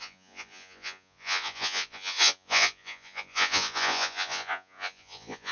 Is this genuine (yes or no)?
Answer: no